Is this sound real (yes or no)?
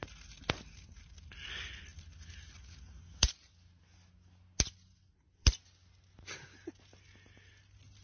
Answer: yes